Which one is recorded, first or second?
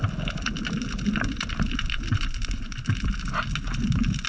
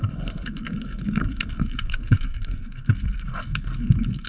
first